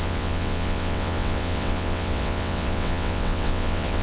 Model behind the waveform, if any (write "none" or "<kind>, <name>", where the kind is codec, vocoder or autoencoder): vocoder, WaveNeXt